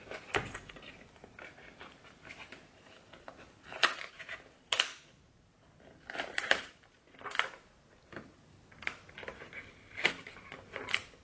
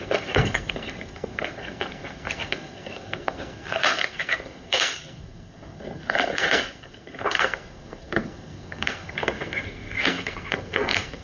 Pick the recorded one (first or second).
first